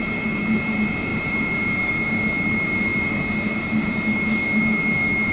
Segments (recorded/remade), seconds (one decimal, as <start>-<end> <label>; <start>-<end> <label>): 0.0-5.3 remade